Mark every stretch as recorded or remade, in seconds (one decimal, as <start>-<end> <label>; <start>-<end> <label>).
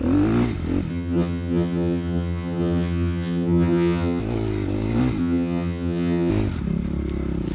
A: 0.0-0.9 recorded; 0.9-4.2 remade; 4.2-5.2 recorded; 5.2-6.3 remade; 6.3-7.5 recorded